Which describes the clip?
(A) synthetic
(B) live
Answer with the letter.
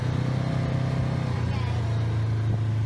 B